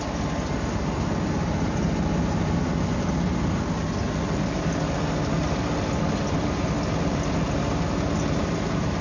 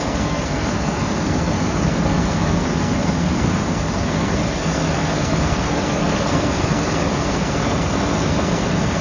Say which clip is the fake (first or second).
second